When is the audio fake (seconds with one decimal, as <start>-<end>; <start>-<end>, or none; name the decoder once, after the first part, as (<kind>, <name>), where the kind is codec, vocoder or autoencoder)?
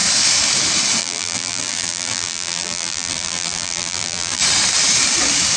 1.0-4.4 (vocoder, BigVGAN v2)